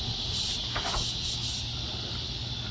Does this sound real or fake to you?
real